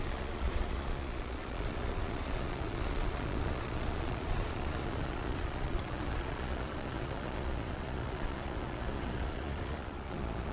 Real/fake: fake